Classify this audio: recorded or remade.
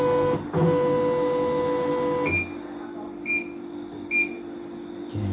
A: recorded